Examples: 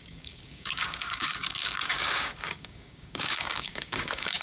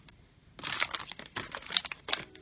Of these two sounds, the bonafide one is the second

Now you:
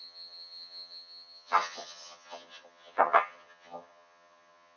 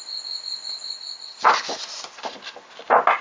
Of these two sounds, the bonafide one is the second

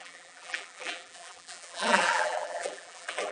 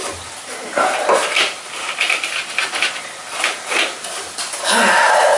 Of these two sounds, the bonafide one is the second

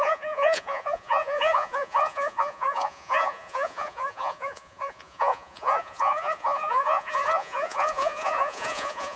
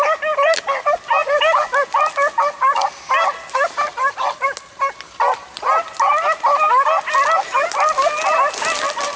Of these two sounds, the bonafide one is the second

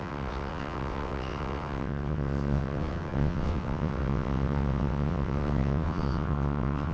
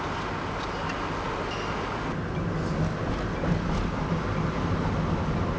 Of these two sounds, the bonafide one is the second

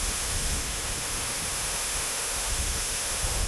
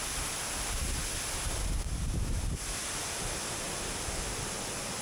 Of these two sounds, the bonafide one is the second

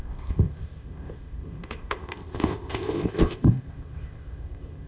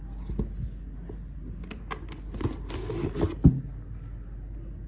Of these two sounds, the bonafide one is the second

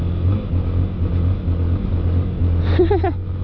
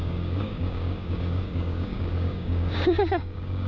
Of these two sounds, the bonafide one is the first